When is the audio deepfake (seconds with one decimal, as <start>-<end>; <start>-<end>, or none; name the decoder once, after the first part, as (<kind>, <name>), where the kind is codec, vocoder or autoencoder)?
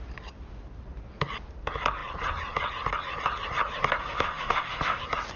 4.0-5.0 (autoencoder, DAC-VAE)